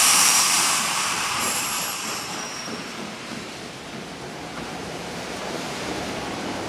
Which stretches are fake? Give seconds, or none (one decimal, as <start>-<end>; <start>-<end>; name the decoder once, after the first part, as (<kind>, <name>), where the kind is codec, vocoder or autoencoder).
0.0-3.7 (vocoder, BigVGAN v2); 4.5-6.0